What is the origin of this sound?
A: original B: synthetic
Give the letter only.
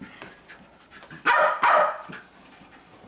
A